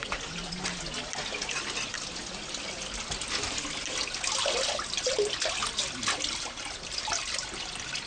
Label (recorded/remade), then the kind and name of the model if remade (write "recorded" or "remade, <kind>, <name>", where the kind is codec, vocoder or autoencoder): recorded